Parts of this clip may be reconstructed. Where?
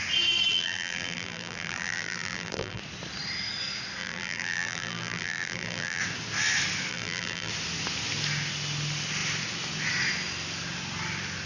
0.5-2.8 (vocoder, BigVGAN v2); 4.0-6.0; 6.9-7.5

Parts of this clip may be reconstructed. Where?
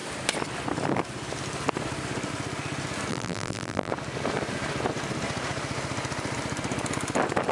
3.1-3.9 (vocoder, BigVGAN v2)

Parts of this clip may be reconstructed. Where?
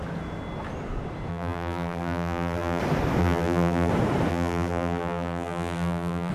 1.3-2.8 (vocoder, BigVGAN v2); 3.2-3.9; 4.3-6.3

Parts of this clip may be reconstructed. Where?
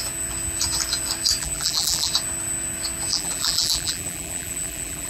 1.4-2.1 (vocoder, BigVGAN v2); 3.1-5.1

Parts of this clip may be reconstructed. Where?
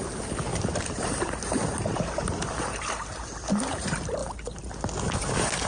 0.5-2.9 (vocoder, BigVGAN v2)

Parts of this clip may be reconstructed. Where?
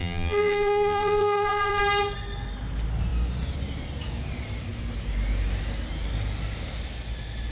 0.0-1.8 (vocoder, BigVGAN v2)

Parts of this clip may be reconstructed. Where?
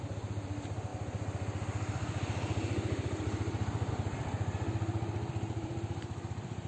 0.0-0.9 (vocoder, BigVGAN v2); 3.9-6.7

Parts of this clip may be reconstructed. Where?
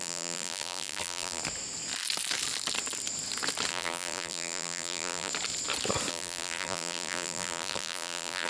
0.0-1.4 (vocoder, BigVGAN v2); 3.7-5.3; 6.1-8.5